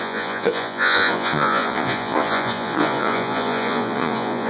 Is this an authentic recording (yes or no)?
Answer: no